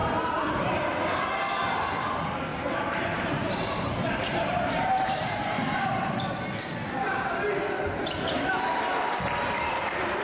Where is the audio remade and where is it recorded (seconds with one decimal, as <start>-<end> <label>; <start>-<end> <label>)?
0.0-2.5 recorded; 2.5-3.9 remade; 3.9-4.3 recorded; 4.3-6.1 remade; 6.1-10.2 recorded